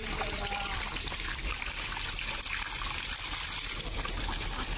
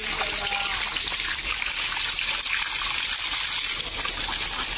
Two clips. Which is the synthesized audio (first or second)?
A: first